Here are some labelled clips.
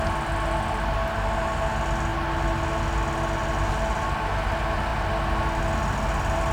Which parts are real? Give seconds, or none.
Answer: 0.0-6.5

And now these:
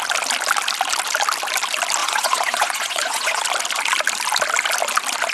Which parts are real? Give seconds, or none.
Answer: 0.0-2.0; 3.4-5.3